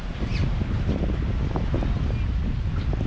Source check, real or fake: real